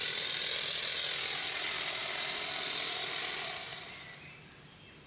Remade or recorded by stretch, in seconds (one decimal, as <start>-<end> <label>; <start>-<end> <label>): 0.0-5.1 recorded